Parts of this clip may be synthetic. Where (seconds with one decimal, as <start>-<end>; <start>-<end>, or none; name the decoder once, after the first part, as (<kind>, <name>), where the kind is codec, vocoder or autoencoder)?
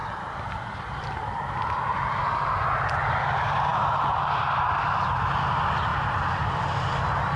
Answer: none